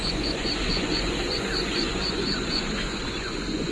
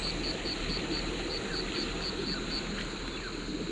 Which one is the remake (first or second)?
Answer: first